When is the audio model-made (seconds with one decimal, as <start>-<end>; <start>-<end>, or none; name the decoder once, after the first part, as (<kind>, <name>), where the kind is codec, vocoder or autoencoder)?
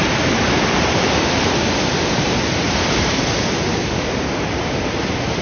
3.7-4.2 (codec, DAC)